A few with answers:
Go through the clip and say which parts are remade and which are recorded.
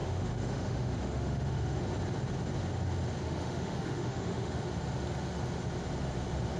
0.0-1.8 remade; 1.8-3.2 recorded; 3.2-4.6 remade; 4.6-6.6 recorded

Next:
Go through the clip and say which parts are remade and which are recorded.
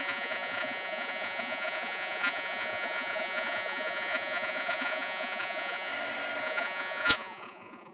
0.0-5.9 remade; 5.9-6.4 recorded; 6.4-7.9 remade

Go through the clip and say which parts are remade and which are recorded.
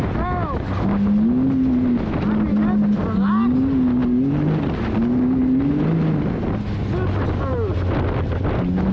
0.0-8.9 recorded